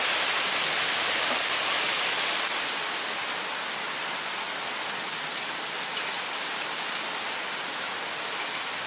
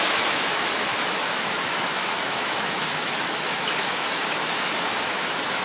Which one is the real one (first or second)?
first